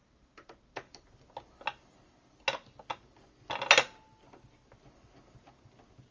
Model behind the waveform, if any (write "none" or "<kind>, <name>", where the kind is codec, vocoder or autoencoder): none